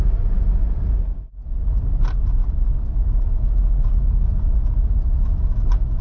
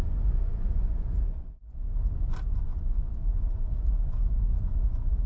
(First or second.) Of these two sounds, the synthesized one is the second